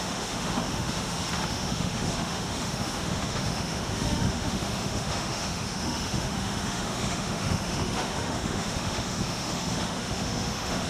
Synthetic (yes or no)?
yes